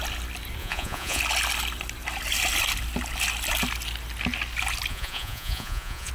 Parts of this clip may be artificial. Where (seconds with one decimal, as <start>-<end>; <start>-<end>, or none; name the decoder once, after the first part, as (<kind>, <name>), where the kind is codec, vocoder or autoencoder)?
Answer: 0.6-1.2 (vocoder, Vocos); 4.9-6.1